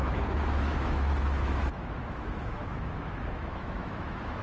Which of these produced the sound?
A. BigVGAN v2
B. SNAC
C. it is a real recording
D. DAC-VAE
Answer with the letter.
D